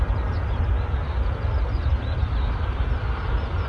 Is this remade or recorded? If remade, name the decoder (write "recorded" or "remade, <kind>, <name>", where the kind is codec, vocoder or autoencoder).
recorded